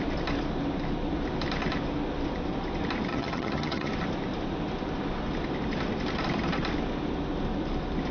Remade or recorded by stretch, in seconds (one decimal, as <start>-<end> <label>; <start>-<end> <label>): 0.0-3.1 recorded; 3.1-3.9 remade; 3.9-8.1 recorded